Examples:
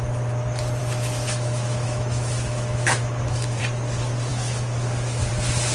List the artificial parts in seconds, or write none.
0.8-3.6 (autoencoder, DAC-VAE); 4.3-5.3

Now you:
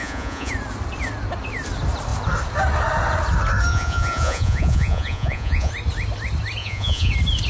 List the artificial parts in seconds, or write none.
0.0-0.5 (vocoder, Vocos); 3.7-5.7; 6.6-7.1